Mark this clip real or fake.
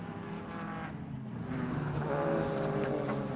real